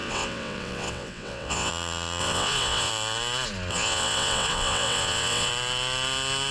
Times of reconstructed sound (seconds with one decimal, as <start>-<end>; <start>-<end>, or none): 0.0-1.7; 2.2-2.9; 3.7-5.5